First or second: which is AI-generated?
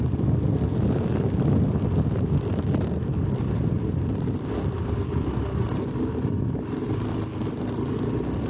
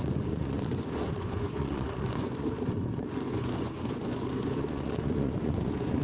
second